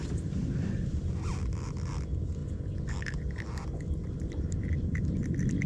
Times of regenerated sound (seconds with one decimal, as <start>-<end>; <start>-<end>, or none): 1.1-5.7